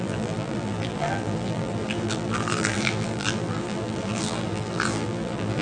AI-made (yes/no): yes